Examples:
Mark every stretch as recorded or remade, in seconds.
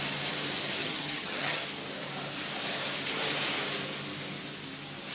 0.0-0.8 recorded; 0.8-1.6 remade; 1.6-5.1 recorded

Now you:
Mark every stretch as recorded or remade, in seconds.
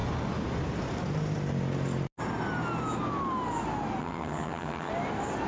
0.0-4.0 recorded; 4.0-4.9 remade; 4.9-5.5 recorded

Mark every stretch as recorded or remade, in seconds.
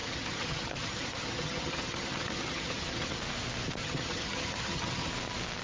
0.0-3.2 remade; 3.2-3.8 recorded; 3.8-5.1 remade; 5.1-5.6 recorded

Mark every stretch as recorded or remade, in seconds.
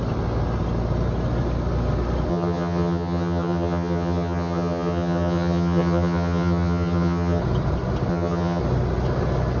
0.0-2.3 recorded; 2.3-7.4 remade; 7.4-8.1 recorded; 8.1-8.6 remade; 8.6-9.6 recorded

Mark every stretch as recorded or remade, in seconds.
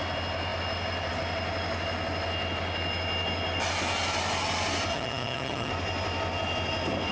0.0-4.9 recorded; 4.9-5.7 remade; 5.7-7.1 recorded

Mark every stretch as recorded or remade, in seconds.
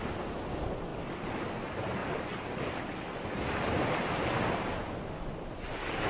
0.0-6.1 recorded